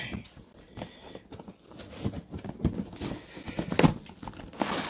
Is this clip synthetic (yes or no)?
no